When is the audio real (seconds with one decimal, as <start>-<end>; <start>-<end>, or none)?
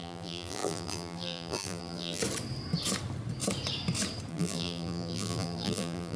2.2-4.3